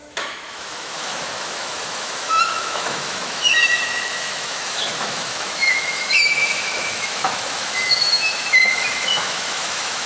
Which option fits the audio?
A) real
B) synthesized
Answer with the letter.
B